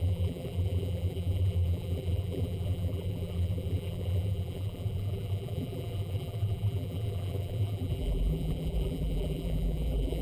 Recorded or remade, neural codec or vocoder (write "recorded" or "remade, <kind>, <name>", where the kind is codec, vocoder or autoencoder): remade, vocoder, BigVGAN v2